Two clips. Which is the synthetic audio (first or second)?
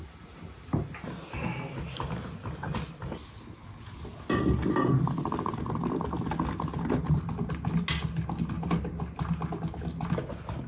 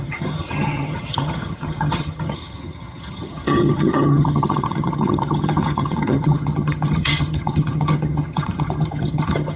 second